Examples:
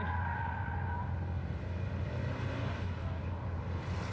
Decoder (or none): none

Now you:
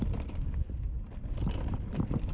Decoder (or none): none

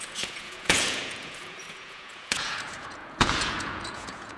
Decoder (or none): vocoder, Vocos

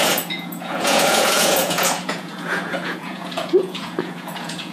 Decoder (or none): vocoder, Vocos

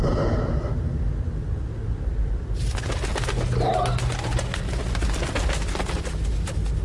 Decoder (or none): none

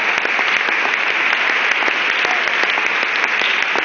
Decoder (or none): none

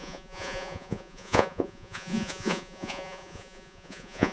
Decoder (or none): vocoder, Vocos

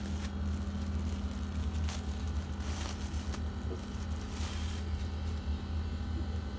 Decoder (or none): none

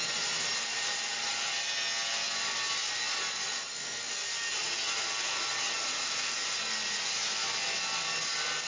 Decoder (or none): none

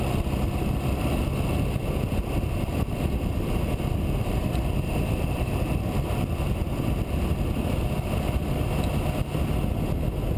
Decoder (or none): none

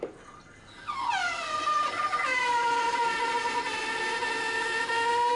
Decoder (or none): none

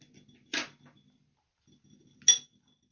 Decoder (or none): none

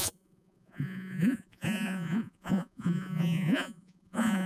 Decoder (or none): vocoder, Vocos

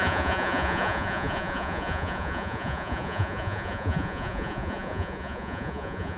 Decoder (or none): vocoder, Vocos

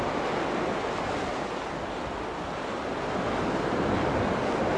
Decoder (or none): none